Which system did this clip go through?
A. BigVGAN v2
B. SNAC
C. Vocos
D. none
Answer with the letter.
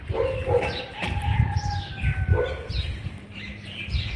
A